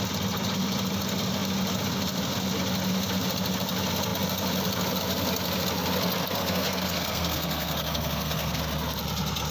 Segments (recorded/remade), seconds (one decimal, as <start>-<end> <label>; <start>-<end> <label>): 0.0-6.4 recorded; 6.4-8.6 remade; 8.6-9.5 recorded